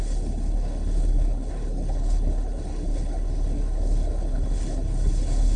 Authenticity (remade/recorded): remade